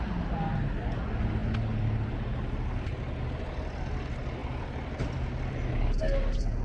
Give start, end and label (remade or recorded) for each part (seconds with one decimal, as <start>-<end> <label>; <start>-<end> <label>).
0.0-4.4 recorded; 4.4-6.0 remade; 6.0-6.6 recorded